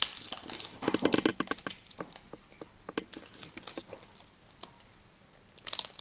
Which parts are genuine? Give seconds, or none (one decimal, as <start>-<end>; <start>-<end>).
0.0-6.0